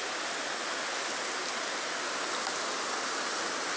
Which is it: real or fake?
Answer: real